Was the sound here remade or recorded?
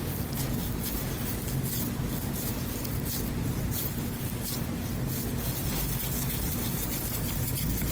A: recorded